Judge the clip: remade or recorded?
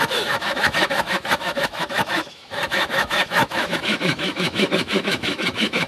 remade